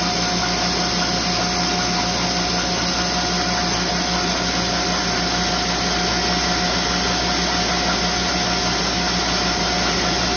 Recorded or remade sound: recorded